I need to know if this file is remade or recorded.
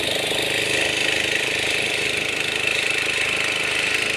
recorded